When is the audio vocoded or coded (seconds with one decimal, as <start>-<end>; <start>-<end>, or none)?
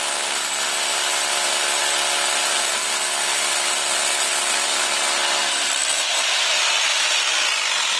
none